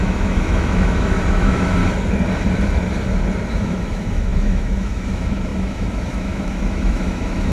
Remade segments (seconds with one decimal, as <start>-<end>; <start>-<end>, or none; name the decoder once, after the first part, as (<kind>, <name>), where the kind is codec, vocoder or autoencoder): 0.0-1.8 (autoencoder, DAC-VAE); 3.5-7.5